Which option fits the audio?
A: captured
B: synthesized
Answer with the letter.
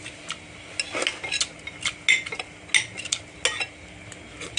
A